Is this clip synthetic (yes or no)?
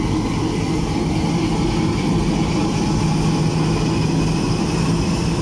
no